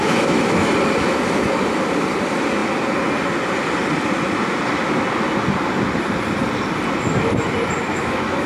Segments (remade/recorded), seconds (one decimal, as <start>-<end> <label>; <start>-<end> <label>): 0.0-0.7 remade; 0.7-7.9 recorded; 7.9-8.5 remade

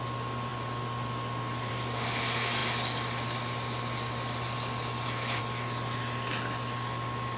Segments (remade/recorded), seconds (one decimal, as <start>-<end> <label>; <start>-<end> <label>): 0.0-7.4 recorded

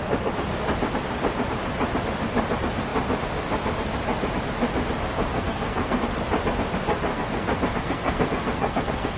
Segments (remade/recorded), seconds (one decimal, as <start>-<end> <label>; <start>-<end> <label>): 0.0-5.3 recorded; 5.3-6.0 remade; 6.0-7.1 recorded; 7.1-9.2 remade

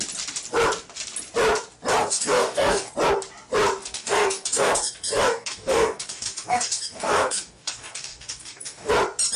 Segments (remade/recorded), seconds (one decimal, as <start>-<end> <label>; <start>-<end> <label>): 0.0-2.0 recorded; 2.0-2.9 remade; 2.9-3.8 recorded; 3.8-8.9 remade; 8.9-9.4 recorded

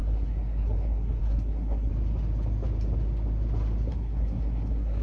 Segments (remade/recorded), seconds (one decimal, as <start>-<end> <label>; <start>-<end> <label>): 0.0-1.9 remade; 1.9-3.9 recorded; 3.9-5.0 remade